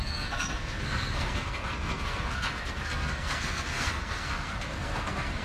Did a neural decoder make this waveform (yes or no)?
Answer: yes